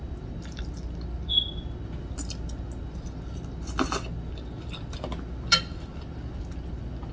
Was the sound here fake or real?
real